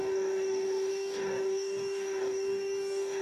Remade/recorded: remade